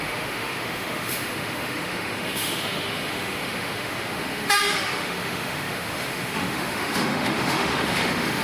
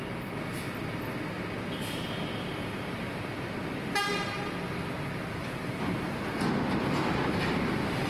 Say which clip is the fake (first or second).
first